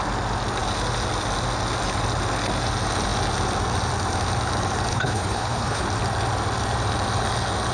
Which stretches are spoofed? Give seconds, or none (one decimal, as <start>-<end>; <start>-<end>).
4.9-5.8